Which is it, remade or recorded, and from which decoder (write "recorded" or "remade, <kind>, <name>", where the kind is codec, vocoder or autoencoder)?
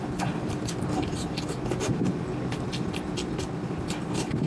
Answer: recorded